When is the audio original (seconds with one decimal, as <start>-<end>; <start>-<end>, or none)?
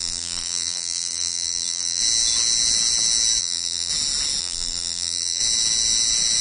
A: 2.0-3.4; 3.9-4.4; 5.4-6.4